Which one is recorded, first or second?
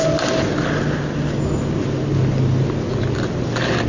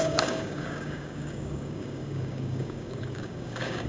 first